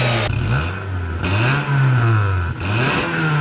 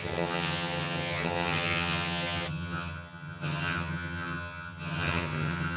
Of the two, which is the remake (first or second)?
second